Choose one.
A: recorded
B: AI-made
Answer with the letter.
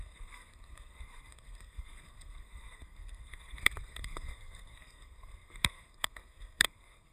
B